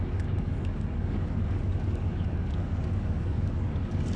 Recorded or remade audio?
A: remade